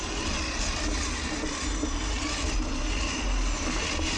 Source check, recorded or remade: recorded